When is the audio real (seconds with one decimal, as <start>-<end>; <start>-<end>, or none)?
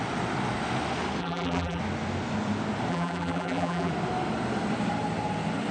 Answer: 0.0-1.2; 1.8-2.9; 3.9-5.7